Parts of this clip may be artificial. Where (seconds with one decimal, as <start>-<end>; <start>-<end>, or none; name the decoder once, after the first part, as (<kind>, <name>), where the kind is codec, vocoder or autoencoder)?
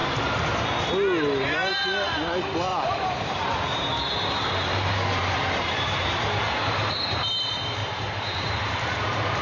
2.7-7.3 (vocoder, BigVGAN v2); 7.8-9.4